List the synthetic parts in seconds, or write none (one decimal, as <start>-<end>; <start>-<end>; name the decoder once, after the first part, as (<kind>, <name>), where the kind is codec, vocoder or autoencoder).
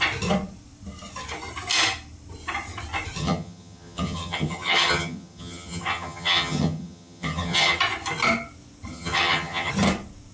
3.2-7.8 (vocoder, HiFi-GAN); 8.9-9.7